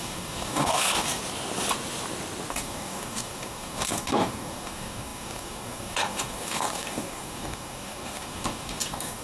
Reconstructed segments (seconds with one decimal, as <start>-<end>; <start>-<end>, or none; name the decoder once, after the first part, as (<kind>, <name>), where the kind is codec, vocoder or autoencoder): 0.0-1.2 (codec, DAC); 2.5-9.2